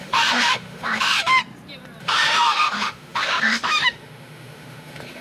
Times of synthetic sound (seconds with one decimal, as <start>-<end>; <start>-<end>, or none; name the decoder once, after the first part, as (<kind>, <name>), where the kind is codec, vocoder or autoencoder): 0.0-1.4 (autoencoder, DAC-VAE); 2.0-5.2